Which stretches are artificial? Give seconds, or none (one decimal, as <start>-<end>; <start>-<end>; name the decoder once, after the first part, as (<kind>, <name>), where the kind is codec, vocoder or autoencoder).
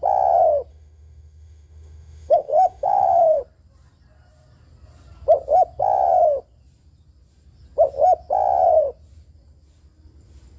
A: 0.7-3.4 (autoencoder, DAC-VAE)